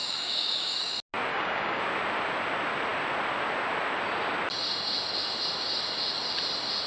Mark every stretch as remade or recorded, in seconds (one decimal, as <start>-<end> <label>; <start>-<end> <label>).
0.0-0.9 remade; 0.9-1.3 recorded; 1.3-1.8 remade; 1.8-6.9 recorded